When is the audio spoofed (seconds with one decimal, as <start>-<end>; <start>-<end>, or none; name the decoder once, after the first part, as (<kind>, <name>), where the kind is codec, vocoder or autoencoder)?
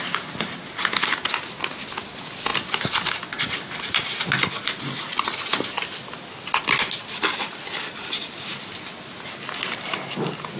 none